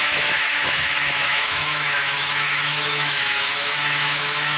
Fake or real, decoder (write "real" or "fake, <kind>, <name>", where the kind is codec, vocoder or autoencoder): fake, autoencoder, DAC-VAE